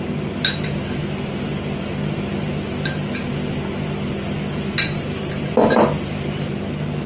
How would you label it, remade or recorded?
recorded